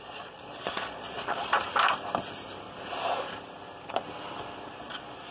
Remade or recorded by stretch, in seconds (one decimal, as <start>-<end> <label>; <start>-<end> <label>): 0.0-1.5 remade; 1.5-4.7 recorded; 4.7-5.3 remade